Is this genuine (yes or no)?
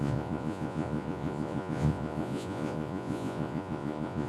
no